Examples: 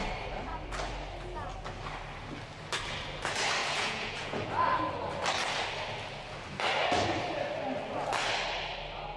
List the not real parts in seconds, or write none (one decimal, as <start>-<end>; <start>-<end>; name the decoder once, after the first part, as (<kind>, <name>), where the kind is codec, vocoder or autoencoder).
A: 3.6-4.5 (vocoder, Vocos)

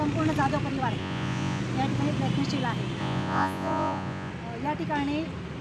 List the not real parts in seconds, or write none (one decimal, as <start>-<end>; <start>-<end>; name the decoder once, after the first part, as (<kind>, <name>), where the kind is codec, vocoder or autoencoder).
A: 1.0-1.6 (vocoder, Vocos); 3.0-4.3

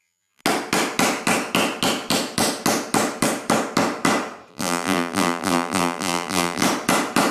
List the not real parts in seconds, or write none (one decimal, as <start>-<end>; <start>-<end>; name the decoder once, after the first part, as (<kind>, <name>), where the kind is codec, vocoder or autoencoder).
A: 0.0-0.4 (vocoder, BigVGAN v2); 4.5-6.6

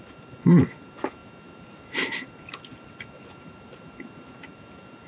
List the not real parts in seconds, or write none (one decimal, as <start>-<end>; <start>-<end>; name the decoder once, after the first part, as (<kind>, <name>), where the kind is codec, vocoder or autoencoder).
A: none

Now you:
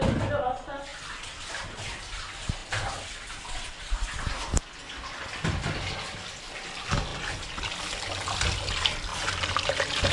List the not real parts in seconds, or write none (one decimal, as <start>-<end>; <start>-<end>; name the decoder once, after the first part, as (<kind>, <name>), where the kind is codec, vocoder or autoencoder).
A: none

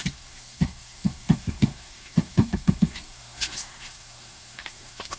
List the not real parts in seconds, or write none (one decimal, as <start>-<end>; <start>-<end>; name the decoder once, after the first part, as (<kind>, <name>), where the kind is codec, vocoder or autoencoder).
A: 0.0-5.2 (codec, SNAC)